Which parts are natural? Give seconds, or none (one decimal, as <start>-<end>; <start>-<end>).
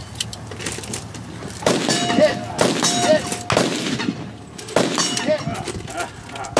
0.0-6.6